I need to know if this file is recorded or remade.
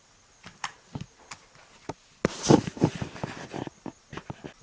recorded